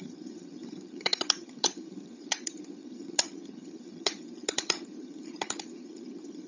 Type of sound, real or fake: fake